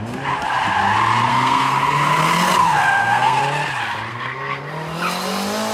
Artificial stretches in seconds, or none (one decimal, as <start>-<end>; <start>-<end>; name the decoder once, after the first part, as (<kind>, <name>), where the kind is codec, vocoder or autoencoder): 1.3-1.8 (codec, SNAC); 2.6-3.4; 4.1-4.7